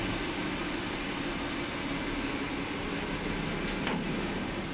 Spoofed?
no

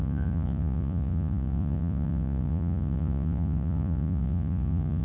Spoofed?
yes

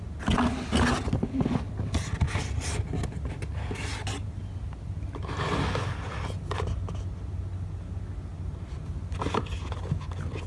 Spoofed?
no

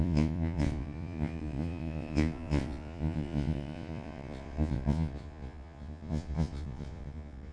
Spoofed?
yes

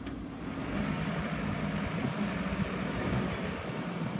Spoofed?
no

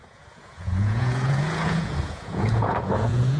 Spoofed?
yes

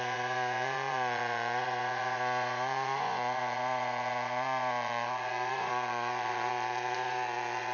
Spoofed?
yes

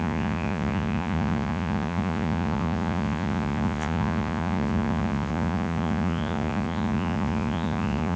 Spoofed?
yes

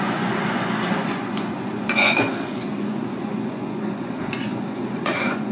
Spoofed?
yes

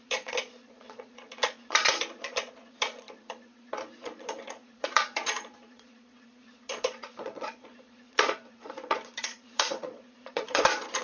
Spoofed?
yes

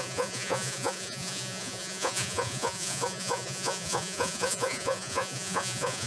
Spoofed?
yes